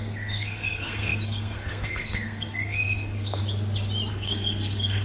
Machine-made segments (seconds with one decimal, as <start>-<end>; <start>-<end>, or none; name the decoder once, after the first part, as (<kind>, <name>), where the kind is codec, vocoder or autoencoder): 0.0-3.4 (codec, SNAC); 4.1-5.0